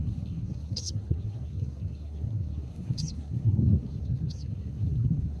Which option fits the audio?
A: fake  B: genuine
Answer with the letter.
A